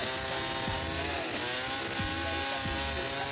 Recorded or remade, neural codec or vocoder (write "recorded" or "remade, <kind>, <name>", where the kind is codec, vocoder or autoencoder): recorded